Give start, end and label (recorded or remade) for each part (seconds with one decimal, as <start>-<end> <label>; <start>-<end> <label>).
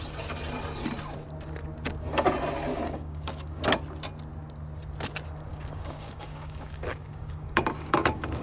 0.0-2.7 recorded; 2.7-3.6 remade; 3.6-5.5 recorded; 5.5-8.4 remade